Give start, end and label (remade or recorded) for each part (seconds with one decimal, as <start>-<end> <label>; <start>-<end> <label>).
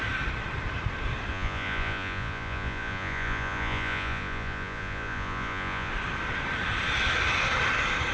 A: 0.0-1.3 recorded; 1.3-5.9 remade; 5.9-8.1 recorded